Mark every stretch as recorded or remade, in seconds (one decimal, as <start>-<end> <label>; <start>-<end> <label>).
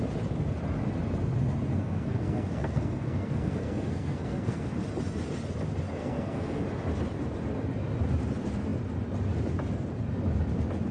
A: 0.0-1.7 recorded; 1.7-4.7 remade; 4.7-6.0 recorded; 6.0-6.6 remade; 6.6-10.9 recorded